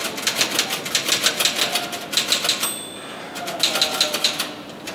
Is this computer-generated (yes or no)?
no